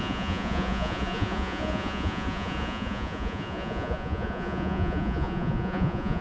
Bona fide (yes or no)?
no